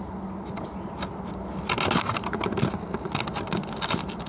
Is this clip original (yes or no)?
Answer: yes